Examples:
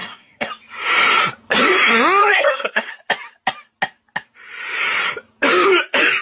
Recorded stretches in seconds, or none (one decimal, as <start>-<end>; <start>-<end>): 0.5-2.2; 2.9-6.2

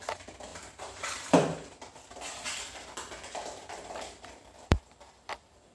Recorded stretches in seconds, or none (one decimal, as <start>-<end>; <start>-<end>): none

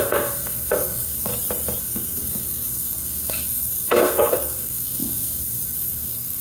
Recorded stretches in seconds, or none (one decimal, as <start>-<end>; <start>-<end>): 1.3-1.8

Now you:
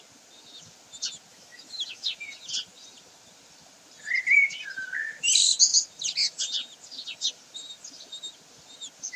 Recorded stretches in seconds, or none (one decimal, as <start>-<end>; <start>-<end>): 0.0-1.3; 2.1-9.2